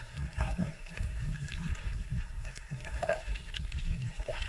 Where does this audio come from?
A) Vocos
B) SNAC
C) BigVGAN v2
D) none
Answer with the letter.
B